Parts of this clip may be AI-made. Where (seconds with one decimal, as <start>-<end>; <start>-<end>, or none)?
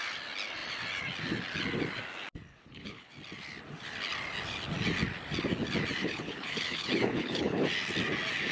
2.5-3.1; 6.0-7.7